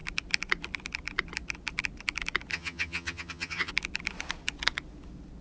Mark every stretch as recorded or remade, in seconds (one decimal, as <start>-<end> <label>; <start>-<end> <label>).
0.0-2.5 recorded; 2.5-3.7 remade; 3.7-5.4 recorded